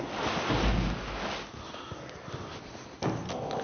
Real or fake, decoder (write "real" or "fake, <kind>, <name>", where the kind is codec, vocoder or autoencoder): real